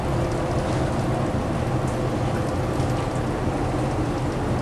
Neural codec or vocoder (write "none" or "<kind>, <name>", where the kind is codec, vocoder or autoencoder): none